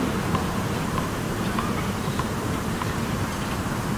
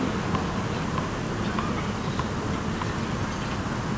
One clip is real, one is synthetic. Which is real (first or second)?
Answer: second